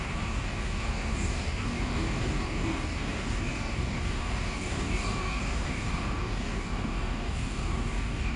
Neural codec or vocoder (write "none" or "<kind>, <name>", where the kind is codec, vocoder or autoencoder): codec, DAC